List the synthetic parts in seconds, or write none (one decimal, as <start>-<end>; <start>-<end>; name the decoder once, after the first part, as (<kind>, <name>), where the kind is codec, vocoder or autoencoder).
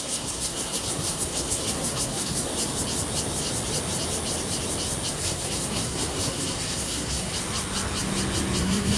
0.0-2.5 (codec, SNAC); 5.1-7.3; 8.6-9.0